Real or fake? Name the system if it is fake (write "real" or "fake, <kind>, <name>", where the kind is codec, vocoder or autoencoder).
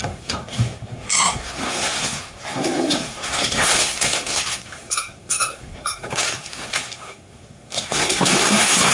fake, codec, SNAC